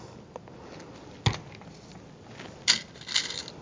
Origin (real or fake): real